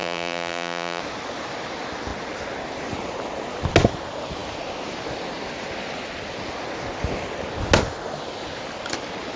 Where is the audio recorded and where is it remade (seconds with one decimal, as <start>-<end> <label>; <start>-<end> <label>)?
0.0-1.0 remade; 1.0-9.4 recorded